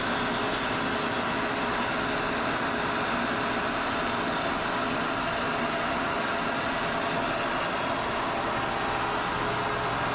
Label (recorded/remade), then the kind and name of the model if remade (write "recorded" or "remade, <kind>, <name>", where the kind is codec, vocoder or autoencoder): recorded